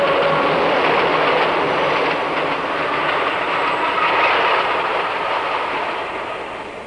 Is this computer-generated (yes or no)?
no